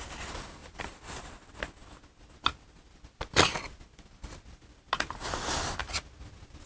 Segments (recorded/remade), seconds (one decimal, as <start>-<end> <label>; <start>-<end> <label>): 0.0-6.7 recorded